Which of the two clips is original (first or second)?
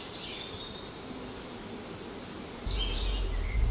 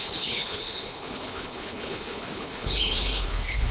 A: first